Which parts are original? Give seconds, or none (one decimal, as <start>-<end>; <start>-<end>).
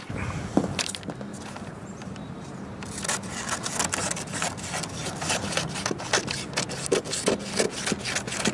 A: 0.0-1.3; 3.0-5.0; 5.5-8.5